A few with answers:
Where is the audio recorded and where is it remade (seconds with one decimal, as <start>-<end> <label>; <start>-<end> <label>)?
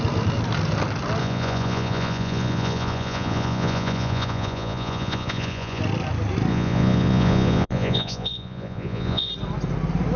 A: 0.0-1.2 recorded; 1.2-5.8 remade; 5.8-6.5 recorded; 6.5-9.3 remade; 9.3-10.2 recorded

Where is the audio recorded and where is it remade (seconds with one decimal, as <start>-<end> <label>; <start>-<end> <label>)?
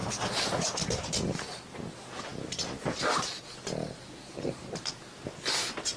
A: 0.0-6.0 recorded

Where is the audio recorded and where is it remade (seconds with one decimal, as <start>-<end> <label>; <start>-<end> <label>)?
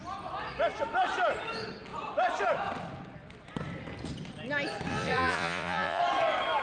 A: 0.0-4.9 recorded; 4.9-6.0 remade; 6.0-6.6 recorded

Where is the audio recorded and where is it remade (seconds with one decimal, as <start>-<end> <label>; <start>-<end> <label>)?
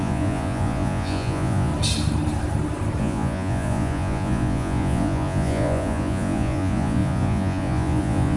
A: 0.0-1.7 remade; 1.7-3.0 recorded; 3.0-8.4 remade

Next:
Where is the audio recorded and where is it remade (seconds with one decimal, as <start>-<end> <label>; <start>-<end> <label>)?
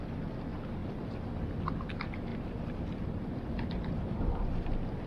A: 0.0-2.3 recorded; 2.3-5.1 remade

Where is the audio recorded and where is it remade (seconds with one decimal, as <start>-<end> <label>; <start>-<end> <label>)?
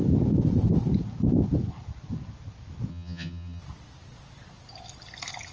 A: 0.0-2.9 recorded; 2.9-3.6 remade; 3.6-5.5 recorded